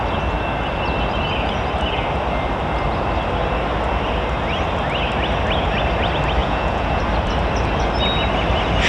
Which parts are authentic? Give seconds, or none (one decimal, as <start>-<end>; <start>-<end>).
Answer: 0.0-6.4; 7.0-8.9